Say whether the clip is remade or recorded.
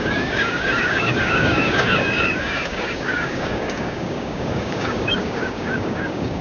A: remade